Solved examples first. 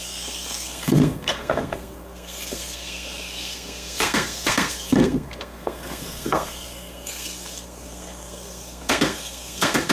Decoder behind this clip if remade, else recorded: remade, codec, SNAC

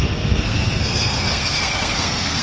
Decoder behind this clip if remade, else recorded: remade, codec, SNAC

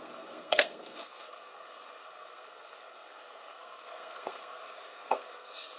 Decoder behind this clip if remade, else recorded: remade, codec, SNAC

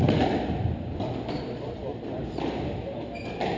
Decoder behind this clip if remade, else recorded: recorded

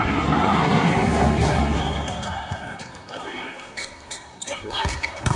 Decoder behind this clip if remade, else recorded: remade, codec, SNAC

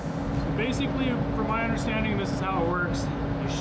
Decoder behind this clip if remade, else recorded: recorded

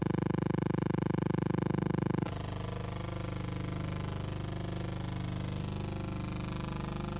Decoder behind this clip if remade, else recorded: recorded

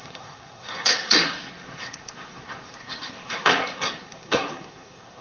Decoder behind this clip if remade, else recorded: remade, codec, SNAC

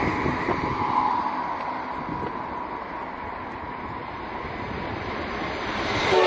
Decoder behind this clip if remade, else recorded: recorded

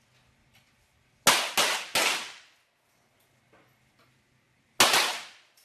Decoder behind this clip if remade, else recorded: recorded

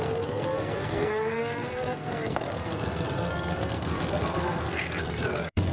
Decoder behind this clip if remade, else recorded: remade, codec, SNAC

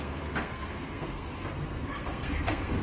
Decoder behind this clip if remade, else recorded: remade, codec, SNAC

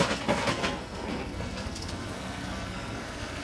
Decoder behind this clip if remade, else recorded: remade, codec, SNAC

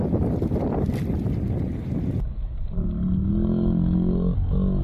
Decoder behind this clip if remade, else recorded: recorded